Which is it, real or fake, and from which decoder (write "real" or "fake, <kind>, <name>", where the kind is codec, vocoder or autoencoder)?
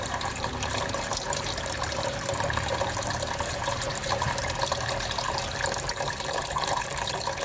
fake, vocoder, BigVGAN v2